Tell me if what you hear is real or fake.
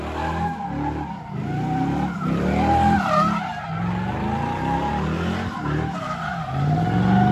real